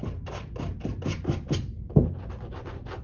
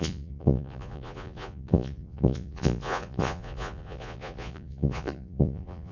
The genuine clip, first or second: first